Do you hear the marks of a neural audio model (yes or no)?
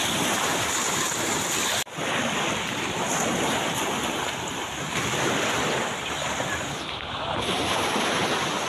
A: yes